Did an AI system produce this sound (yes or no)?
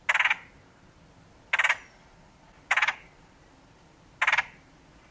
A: no